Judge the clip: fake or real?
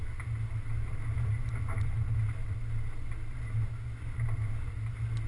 real